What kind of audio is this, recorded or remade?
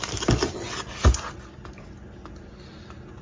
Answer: recorded